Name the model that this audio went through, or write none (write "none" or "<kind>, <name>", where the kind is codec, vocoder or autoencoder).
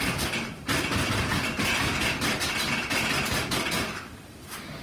vocoder, BigVGAN v2